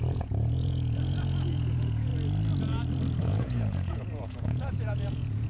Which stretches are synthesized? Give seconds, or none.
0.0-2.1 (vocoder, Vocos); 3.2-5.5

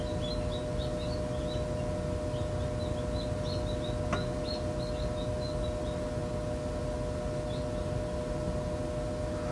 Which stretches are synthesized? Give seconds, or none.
none

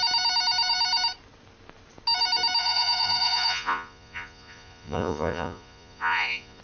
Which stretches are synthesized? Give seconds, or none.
2.6-6.6 (vocoder, Vocos)

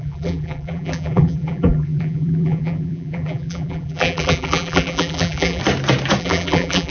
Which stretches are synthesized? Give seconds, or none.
0.0-5.6 (vocoder, BigVGAN v2); 6.2-6.9

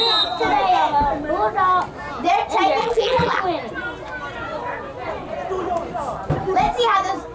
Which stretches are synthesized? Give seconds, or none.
2.8-3.4 (vocoder, BigVGAN v2)

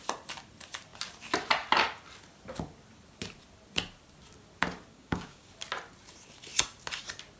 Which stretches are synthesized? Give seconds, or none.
4.9-5.5 (codec, DAC)

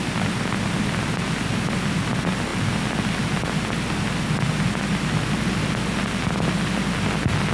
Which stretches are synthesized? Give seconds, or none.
none